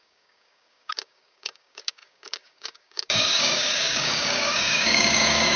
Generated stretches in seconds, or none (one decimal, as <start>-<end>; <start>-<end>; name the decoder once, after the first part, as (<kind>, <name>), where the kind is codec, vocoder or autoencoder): 0.0-5.6 (codec, DAC)